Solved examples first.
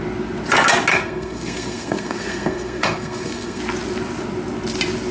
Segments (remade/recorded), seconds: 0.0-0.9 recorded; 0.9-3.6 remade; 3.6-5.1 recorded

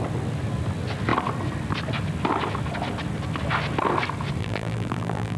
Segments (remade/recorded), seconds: 0.0-4.4 recorded; 4.4-5.4 remade

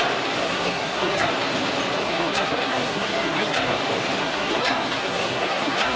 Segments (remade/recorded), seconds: 0.0-0.4 recorded; 0.4-1.3 remade; 1.3-2.0 recorded; 2.0-3.8 remade; 3.8-4.2 recorded; 4.2-6.0 remade